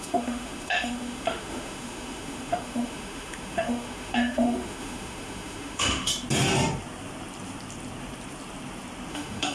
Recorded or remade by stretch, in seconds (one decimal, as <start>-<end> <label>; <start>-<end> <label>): 0.0-6.1 remade; 6.1-9.1 recorded; 9.1-9.5 remade